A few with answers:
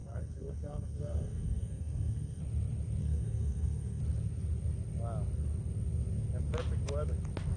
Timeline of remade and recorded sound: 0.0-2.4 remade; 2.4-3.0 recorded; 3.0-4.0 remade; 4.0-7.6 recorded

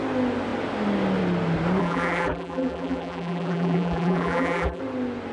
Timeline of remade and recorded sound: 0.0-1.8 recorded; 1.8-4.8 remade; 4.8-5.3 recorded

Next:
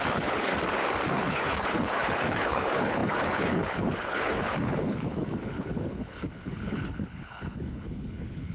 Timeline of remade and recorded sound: 0.0-0.5 remade; 0.5-1.1 recorded; 1.1-8.5 remade